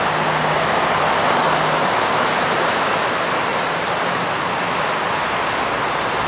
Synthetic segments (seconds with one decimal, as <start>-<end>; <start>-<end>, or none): 1.8-2.9; 3.5-4.6